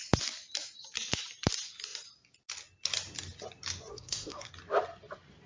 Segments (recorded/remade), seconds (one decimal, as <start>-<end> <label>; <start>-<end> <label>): 0.0-3.9 recorded; 3.9-4.5 remade; 4.5-5.5 recorded